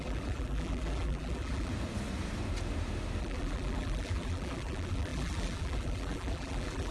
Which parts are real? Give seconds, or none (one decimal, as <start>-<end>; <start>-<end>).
1.7-3.2